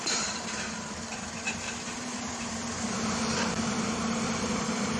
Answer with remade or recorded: remade